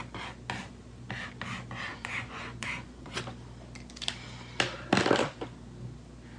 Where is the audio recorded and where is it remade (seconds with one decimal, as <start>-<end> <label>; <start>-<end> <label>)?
0.0-1.9 recorded; 1.9-3.2 remade; 3.2-6.4 recorded